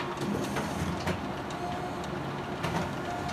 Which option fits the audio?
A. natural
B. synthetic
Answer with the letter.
A